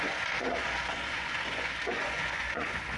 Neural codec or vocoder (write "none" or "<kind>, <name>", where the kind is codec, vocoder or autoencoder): vocoder, Vocos